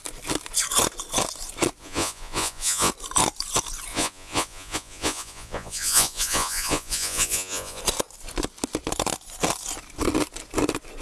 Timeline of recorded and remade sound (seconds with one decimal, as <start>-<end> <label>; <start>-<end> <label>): 0.0-1.8 recorded; 1.8-2.9 remade; 2.9-3.9 recorded; 3.9-7.8 remade; 7.8-11.0 recorded